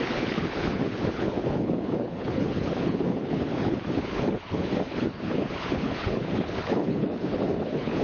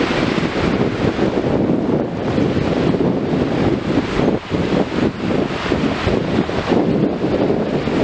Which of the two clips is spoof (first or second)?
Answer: first